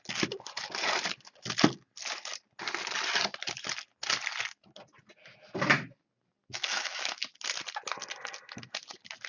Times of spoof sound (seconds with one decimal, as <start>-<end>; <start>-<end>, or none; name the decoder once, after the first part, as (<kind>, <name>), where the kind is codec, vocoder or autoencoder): 6.4-7.2 (autoencoder, DAC-VAE)